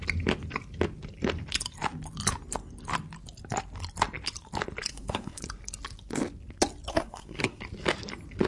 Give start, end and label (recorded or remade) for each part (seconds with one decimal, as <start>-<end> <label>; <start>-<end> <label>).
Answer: 0.0-4.9 recorded; 4.9-5.4 remade; 5.4-6.9 recorded; 6.9-7.6 remade; 7.6-8.5 recorded